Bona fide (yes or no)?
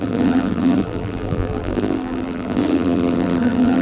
no